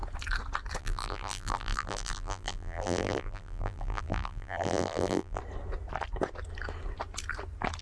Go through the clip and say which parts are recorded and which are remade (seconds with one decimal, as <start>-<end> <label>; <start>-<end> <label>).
0.0-0.8 recorded; 0.8-5.4 remade; 5.4-7.8 recorded

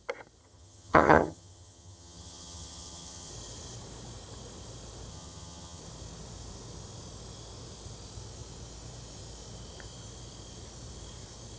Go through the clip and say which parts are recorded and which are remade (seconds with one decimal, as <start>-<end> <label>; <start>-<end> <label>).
0.0-0.4 recorded; 0.4-3.3 remade; 3.3-5.1 recorded; 5.1-5.8 remade; 5.8-11.6 recorded

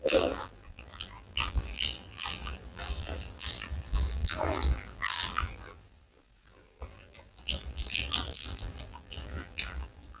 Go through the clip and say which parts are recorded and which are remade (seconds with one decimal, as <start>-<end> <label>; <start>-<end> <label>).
0.0-10.2 remade

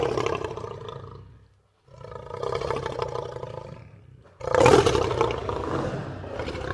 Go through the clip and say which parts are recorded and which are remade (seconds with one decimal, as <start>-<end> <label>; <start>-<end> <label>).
0.0-5.4 recorded; 5.4-5.9 remade; 5.9-6.7 recorded

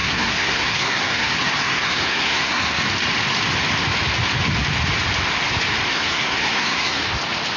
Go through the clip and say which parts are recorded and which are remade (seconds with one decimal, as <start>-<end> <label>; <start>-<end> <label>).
0.0-2.8 remade; 2.8-5.9 recorded; 5.9-7.0 remade; 7.0-7.6 recorded

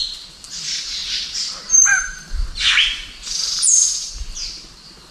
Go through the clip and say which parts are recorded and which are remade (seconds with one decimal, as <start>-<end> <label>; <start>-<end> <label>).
0.0-5.1 recorded

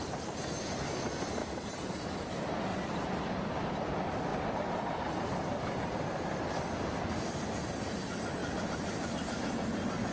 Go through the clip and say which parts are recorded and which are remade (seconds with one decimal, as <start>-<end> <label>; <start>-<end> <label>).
0.0-1.4 recorded; 1.4-2.3 remade; 2.3-2.7 recorded; 2.7-3.7 remade; 3.7-4.3 recorded; 4.3-6.4 remade; 6.4-8.4 recorded; 8.4-9.4 remade; 9.4-10.1 recorded